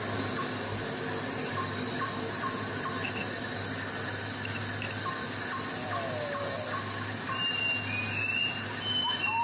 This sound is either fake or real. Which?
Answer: real